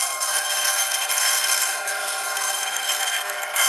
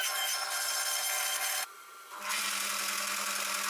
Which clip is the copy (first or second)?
first